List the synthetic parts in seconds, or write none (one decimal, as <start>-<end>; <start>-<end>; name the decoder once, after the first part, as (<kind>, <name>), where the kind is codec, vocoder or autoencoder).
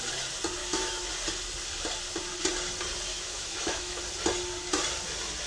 0.6-1.1 (autoencoder, DAC-VAE); 3.1-4.0